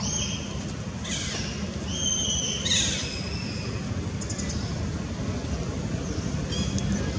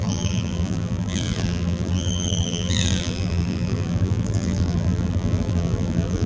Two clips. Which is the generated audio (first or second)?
second